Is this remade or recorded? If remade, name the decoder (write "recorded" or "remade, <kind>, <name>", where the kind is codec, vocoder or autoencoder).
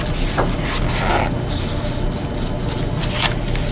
recorded